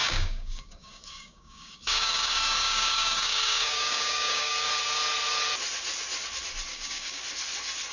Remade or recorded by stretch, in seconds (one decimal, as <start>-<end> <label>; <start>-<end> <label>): 0.0-4.7 remade; 4.7-6.7 recorded; 6.7-7.2 remade; 7.2-7.9 recorded

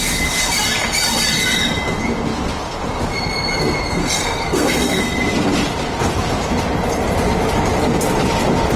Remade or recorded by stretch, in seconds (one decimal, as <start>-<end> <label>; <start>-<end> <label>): 0.0-4.0 recorded; 4.0-5.0 remade; 5.0-8.8 recorded

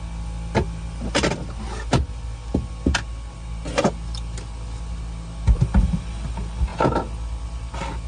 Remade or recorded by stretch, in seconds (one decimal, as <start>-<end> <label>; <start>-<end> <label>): 0.0-8.1 recorded

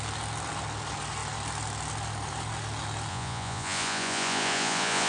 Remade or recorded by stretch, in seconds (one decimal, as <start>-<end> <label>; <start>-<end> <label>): 0.0-3.1 recorded; 3.1-5.1 remade

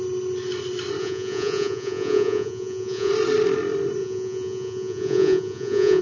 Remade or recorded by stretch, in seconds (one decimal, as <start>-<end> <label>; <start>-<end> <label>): 0.0-1.0 recorded; 1.0-3.1 remade; 3.1-4.0 recorded; 4.0-6.0 remade

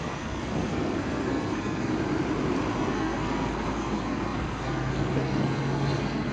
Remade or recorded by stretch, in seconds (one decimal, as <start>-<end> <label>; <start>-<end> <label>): 0.0-1.9 remade; 1.9-2.8 recorded; 2.8-6.3 remade

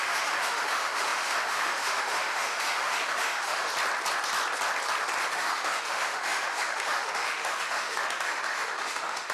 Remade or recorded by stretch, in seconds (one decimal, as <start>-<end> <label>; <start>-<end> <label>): 0.0-3.7 remade; 3.7-5.3 recorded; 5.3-9.3 remade

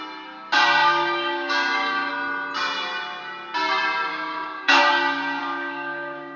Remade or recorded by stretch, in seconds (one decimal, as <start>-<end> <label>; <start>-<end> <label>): 0.0-0.8 recorded; 0.8-2.1 remade; 2.1-4.1 recorded; 4.1-4.8 remade; 4.8-5.4 recorded; 5.4-6.4 remade